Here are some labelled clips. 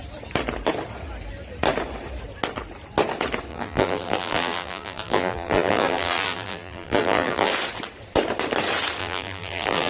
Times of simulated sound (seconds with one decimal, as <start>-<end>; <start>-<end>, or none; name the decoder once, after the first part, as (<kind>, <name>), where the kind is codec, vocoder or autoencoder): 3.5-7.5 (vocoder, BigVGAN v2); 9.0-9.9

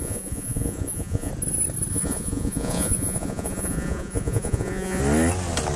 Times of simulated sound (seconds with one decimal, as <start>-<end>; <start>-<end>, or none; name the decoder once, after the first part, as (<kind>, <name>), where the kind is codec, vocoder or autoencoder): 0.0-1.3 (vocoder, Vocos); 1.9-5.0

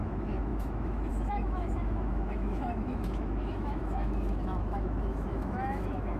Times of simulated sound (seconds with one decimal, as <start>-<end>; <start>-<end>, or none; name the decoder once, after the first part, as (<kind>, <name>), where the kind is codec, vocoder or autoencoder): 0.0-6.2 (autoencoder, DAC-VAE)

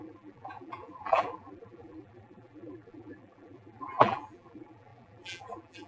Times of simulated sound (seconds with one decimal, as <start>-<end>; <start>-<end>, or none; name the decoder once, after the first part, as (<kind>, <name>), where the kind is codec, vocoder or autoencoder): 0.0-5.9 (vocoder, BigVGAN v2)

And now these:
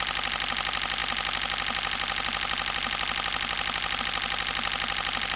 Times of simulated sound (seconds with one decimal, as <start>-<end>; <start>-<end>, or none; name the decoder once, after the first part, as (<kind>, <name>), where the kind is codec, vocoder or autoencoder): none

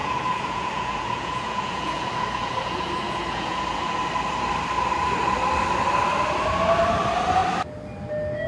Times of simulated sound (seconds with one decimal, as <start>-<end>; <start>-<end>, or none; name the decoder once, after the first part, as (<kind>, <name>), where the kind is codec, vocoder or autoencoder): 0.0-4.0 (vocoder, Vocos)